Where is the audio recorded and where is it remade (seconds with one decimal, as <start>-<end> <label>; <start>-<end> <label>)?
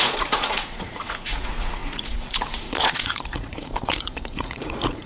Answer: 0.0-5.1 remade